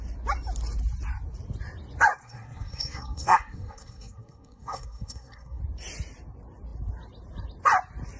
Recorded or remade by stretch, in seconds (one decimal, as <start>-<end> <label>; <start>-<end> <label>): 0.0-2.2 recorded; 2.2-5.6 remade; 5.6-8.2 recorded